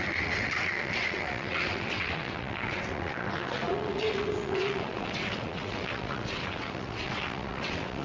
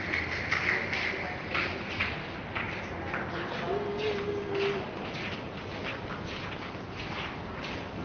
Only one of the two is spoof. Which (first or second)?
first